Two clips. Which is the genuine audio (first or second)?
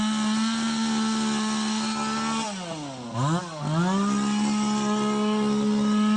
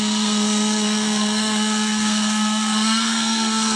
first